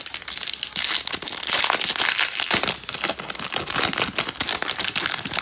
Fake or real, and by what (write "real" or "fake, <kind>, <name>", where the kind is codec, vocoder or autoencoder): real